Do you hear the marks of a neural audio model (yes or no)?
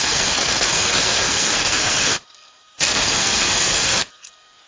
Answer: yes